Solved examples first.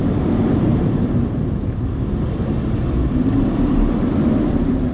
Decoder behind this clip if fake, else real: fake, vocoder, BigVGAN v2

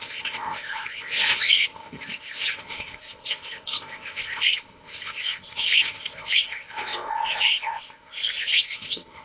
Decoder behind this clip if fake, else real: fake, codec, ZipCodec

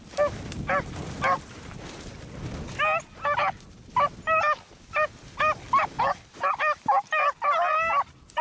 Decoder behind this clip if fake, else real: real